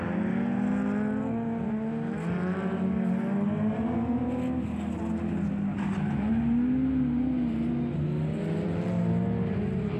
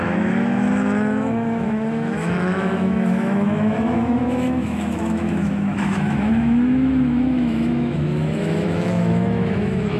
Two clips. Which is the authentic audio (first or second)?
first